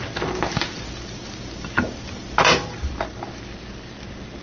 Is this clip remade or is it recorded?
remade